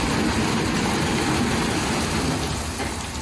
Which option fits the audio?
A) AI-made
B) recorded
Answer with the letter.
B